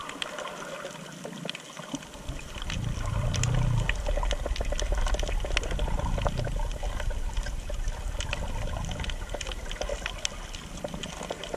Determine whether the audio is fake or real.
real